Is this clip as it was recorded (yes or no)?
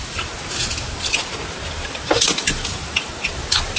yes